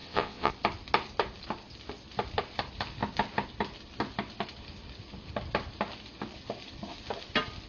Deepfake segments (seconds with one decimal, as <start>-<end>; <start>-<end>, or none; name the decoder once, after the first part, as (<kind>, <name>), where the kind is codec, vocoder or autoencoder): 0.0-0.5 (vocoder, WaveNeXt)